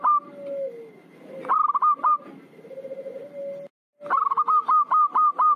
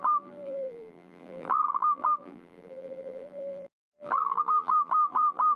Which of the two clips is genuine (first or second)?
first